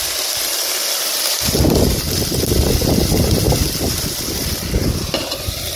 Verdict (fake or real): real